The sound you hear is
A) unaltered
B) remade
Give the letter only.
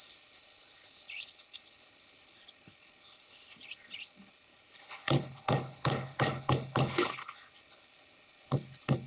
B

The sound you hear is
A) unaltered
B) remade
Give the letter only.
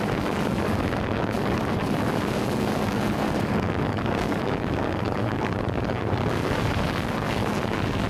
B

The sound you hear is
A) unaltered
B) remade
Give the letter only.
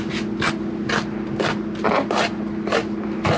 A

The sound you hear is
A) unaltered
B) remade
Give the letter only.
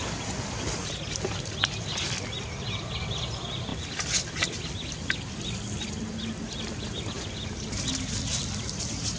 A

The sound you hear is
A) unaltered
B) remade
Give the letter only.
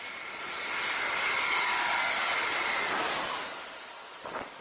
A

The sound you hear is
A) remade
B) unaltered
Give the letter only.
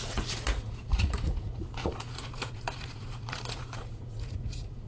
A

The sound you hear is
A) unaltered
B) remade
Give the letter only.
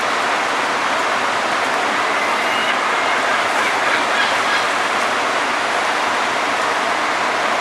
A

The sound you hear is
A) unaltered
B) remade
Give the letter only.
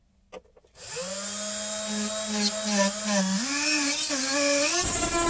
A